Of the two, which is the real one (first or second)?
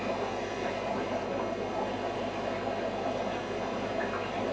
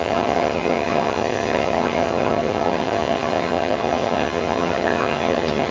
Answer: first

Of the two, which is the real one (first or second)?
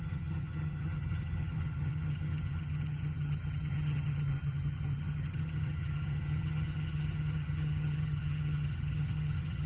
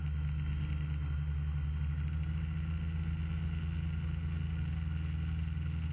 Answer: second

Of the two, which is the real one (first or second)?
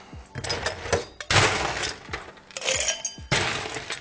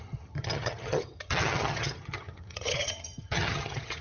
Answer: first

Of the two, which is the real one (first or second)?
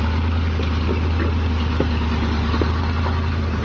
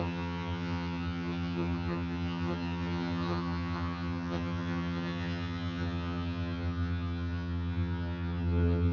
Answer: first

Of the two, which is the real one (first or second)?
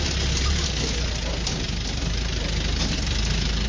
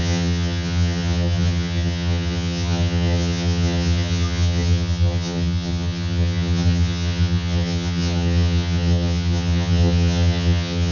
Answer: first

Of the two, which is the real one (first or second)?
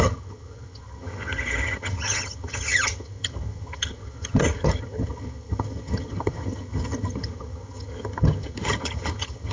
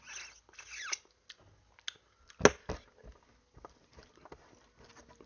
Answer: second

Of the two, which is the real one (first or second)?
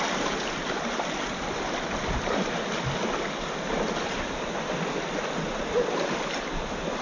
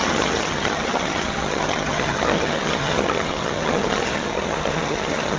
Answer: first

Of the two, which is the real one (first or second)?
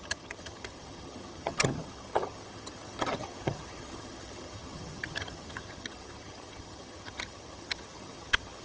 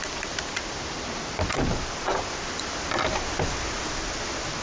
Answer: second